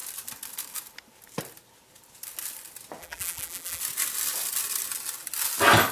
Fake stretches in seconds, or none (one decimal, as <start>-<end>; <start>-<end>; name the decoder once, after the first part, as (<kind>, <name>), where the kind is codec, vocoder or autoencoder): 3.0-3.8 (vocoder, BigVGAN v2)